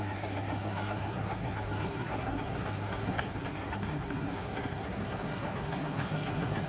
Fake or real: fake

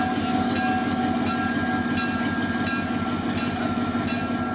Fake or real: real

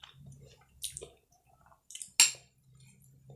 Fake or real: real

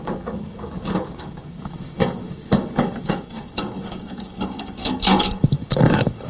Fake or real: fake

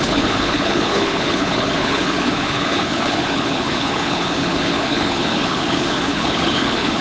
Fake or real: fake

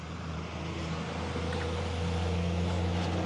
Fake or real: real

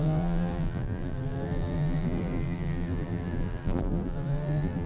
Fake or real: fake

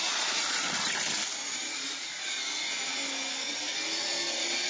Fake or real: real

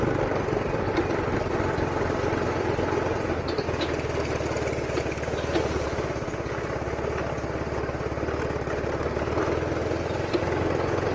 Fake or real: real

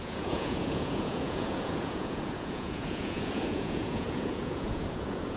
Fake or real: fake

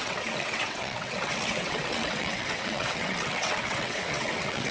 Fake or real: fake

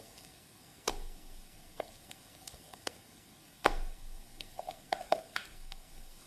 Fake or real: fake